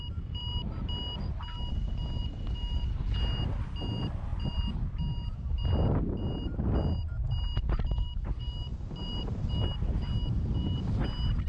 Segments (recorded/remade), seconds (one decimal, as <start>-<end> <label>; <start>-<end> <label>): 0.0-4.3 recorded; 4.3-4.9 remade; 4.9-8.7 recorded; 8.7-9.5 remade; 9.5-11.5 recorded